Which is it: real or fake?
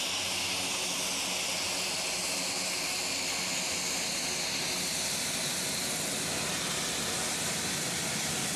real